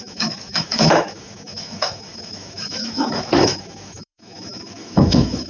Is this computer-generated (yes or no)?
yes